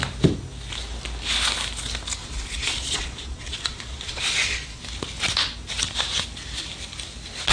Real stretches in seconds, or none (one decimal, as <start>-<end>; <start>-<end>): 0.0-2.2; 4.8-7.5

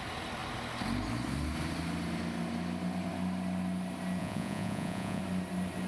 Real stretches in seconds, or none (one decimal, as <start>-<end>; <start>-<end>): 0.0-4.2; 5.2-5.9